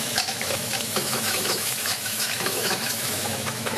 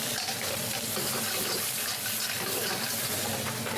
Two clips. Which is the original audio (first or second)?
second